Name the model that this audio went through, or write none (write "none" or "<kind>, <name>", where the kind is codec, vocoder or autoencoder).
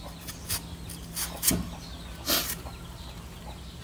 none